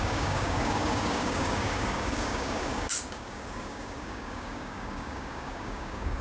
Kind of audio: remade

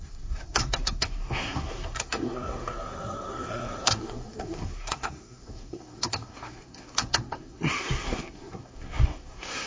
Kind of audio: remade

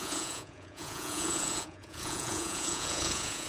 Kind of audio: remade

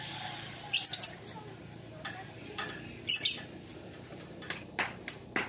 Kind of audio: recorded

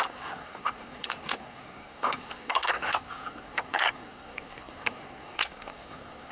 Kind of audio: remade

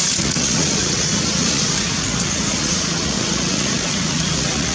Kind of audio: remade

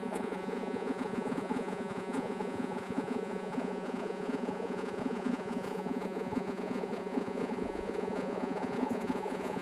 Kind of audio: remade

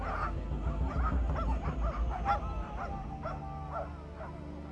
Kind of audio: recorded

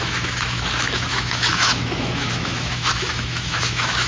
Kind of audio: remade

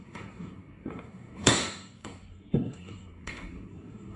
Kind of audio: remade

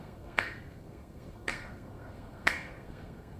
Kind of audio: remade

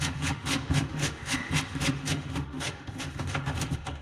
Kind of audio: remade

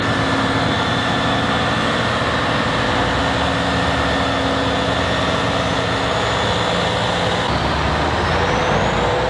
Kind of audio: recorded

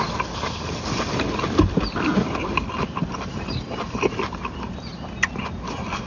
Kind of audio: recorded